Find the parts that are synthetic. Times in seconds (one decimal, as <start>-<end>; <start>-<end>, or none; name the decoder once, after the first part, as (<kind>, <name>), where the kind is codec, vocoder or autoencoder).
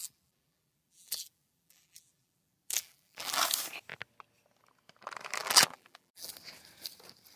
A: 0.0-3.4 (vocoder, BigVGAN v2); 5.4-6.3